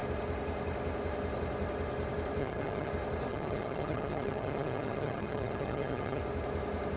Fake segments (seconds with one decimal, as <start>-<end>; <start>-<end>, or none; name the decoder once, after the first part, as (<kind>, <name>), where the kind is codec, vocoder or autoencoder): 2.4-2.9 (vocoder, HiFi-GAN); 3.3-6.2